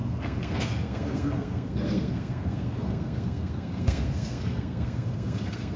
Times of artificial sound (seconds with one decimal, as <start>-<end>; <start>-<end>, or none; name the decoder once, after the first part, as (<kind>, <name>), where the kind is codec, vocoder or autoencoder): 0.0-5.8 (codec, SNAC)